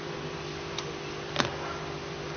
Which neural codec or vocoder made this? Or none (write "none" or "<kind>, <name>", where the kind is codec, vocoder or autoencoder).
none